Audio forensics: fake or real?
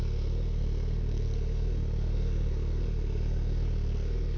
fake